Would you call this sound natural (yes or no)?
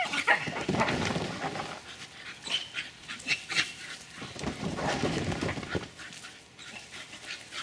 yes